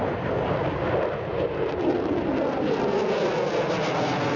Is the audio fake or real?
real